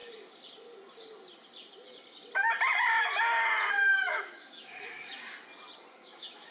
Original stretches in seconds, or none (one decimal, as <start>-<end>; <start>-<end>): 0.0-3.9; 5.1-5.9